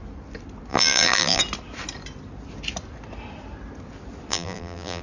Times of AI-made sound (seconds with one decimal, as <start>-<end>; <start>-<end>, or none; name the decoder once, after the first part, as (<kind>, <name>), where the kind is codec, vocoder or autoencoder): 0.7-1.4 (vocoder, BigVGAN v2); 4.3-5.0